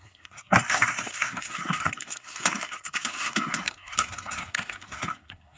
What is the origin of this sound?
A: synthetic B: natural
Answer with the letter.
A